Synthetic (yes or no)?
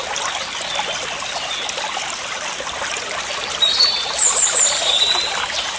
no